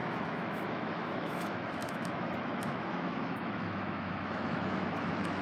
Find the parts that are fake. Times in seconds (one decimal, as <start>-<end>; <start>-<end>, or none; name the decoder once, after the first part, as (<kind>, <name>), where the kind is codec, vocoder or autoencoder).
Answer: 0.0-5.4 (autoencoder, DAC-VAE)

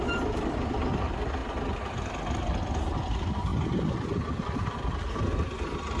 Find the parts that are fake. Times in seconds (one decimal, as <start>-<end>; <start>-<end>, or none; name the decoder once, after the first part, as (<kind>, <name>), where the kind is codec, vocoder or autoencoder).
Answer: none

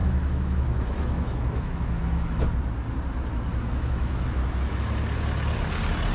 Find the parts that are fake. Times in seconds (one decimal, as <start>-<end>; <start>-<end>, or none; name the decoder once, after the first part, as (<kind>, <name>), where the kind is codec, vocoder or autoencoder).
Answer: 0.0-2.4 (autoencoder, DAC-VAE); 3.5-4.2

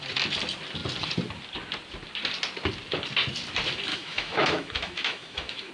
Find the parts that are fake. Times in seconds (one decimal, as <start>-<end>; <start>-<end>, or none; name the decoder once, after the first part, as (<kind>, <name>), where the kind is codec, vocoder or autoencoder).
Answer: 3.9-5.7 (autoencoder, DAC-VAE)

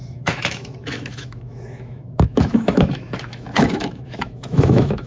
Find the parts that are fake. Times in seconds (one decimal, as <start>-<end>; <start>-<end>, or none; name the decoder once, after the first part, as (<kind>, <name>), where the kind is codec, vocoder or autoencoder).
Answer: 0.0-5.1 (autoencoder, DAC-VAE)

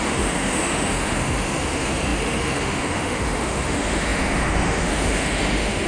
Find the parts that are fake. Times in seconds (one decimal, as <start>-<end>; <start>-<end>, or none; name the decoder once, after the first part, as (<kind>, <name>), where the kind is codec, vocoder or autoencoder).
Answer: 0.0-5.9 (autoencoder, DAC-VAE)

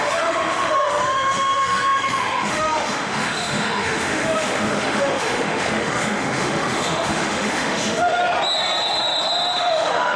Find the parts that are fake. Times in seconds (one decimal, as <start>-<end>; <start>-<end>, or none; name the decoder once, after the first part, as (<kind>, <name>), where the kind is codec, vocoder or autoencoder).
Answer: 0.0-8.2 (autoencoder, DAC-VAE); 9.6-10.2